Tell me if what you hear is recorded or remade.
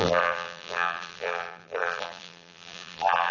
remade